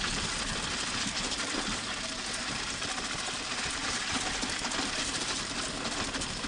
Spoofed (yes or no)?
no